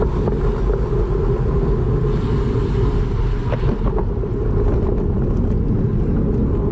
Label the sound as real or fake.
real